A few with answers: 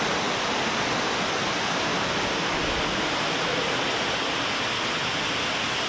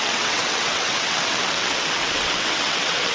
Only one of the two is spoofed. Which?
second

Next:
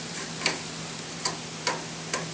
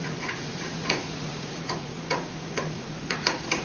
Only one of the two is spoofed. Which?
second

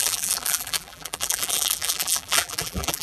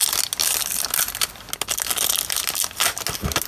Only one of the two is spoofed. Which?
first